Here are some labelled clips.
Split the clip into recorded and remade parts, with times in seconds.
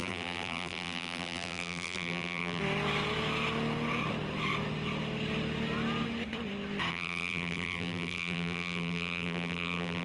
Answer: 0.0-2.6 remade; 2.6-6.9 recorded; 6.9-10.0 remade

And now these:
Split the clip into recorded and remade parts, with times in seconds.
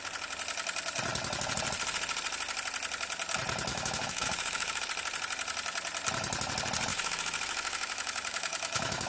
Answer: 0.0-3.7 recorded; 3.7-4.8 remade; 4.8-6.9 recorded; 6.9-9.1 remade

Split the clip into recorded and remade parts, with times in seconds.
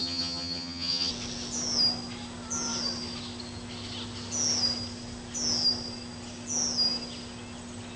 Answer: 0.0-1.1 remade; 1.1-8.0 recorded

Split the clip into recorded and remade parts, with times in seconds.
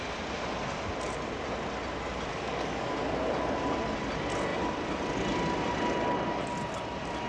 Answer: 0.0-2.3 recorded; 2.3-2.9 remade; 2.9-7.3 recorded